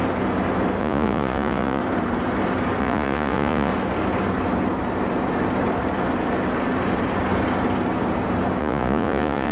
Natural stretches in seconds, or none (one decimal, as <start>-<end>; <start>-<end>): 0.0-0.8; 1.8-2.8; 3.7-8.6